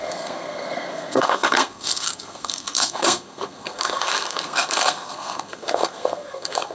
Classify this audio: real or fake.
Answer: fake